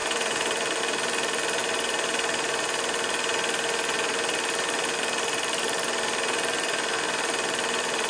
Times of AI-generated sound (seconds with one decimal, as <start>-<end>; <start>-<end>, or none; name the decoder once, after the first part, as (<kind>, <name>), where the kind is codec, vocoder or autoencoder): 0.0-1.6 (vocoder, BigVGAN v2); 5.0-8.1